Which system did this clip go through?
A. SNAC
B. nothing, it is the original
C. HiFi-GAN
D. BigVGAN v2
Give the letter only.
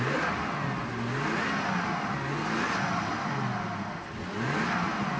B